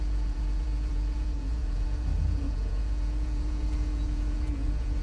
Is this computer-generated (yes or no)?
yes